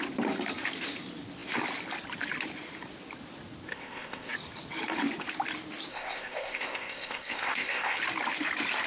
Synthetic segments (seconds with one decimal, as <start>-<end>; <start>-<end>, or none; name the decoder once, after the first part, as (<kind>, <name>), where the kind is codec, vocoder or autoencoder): 3.7-4.3 (codec, ZipCodec); 5.9-8.0